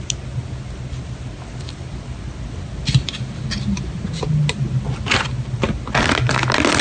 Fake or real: real